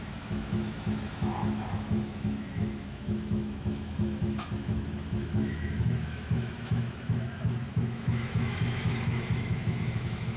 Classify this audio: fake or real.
fake